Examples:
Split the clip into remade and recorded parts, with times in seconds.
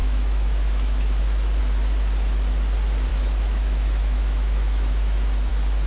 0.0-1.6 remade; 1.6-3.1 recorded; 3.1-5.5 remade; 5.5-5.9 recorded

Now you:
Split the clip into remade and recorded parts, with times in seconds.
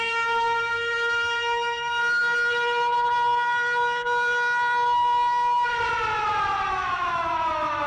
0.0-2.0 remade; 2.0-6.7 recorded; 6.7-7.9 remade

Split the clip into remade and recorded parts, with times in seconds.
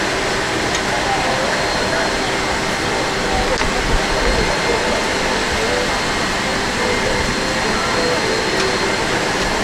0.0-9.6 recorded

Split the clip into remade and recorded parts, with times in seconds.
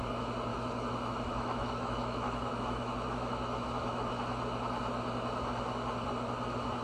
0.0-0.5 recorded; 0.5-4.4 remade; 4.4-6.8 recorded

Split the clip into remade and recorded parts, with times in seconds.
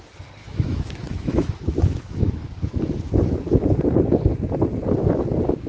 0.0-0.4 recorded; 0.4-2.5 remade; 2.5-5.7 recorded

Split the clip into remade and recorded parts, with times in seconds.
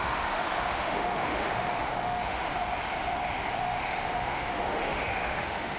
0.0-2.4 remade; 2.4-3.5 recorded; 3.5-5.8 remade